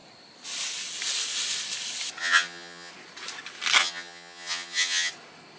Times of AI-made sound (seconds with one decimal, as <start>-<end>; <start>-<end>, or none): 2.2-2.9; 3.8-5.1